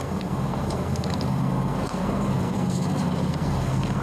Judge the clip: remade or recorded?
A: remade